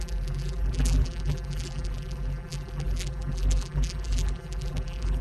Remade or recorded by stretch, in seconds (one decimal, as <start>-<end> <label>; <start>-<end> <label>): 0.0-5.2 remade